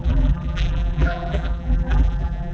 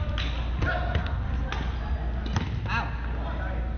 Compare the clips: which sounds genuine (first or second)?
second